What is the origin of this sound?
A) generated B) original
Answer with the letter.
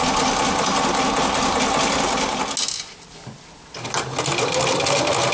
B